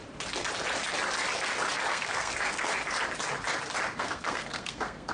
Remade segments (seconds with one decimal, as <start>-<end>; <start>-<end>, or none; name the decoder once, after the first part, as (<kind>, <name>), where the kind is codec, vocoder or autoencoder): 1.9-2.7 (codec, SNAC); 4.0-5.1